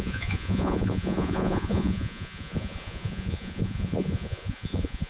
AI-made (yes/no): yes